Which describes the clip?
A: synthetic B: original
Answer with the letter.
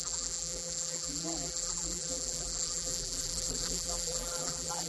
A